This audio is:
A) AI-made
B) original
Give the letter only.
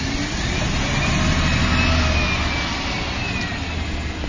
B